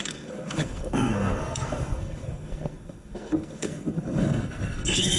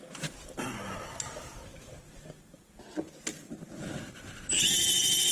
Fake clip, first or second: first